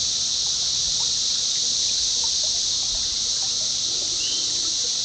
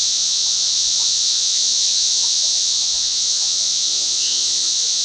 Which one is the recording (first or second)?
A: first